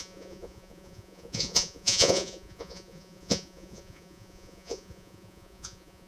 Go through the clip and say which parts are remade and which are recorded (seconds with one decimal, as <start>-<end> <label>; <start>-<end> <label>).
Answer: 0.0-6.1 remade